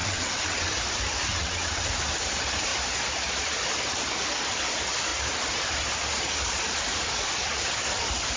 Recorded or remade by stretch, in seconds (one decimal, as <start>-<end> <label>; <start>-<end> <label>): 0.0-0.7 remade; 0.7-1.3 recorded; 1.3-1.9 remade; 1.9-8.4 recorded